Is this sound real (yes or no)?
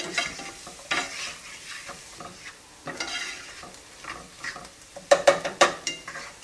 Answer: no